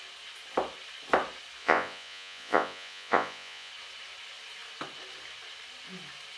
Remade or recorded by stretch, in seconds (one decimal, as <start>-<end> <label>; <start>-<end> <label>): 0.0-1.6 recorded; 1.6-3.7 remade; 3.7-6.4 recorded